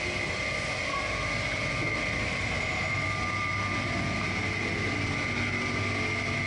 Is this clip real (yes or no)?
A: yes